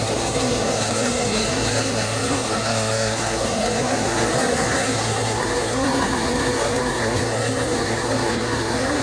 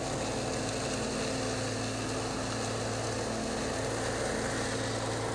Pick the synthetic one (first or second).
first